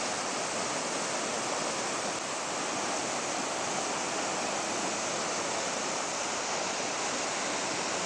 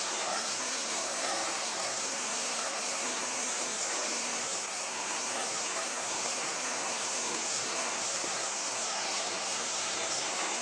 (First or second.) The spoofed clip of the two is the second